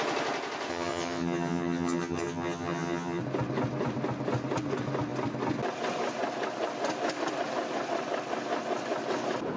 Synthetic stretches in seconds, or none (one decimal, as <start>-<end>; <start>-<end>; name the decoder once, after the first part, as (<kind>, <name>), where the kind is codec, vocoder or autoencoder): 0.7-3.2 (vocoder, HiFi-GAN)